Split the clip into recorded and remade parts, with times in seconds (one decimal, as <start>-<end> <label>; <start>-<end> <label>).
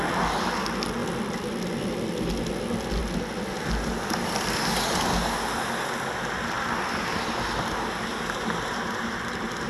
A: 0.0-8.1 recorded; 8.1-9.7 remade